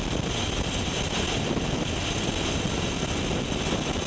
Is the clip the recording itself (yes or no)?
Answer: yes